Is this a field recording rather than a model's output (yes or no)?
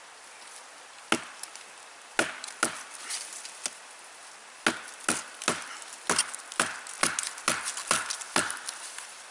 yes